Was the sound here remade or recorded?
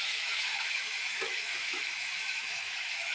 remade